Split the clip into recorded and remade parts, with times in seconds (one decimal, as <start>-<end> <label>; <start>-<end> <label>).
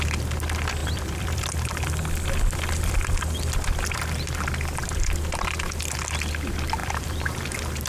0.0-0.8 recorded; 0.8-1.4 remade; 1.4-6.8 recorded; 6.8-7.4 remade; 7.4-7.9 recorded